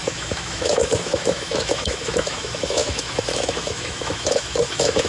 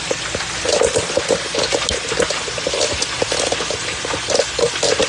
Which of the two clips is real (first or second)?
second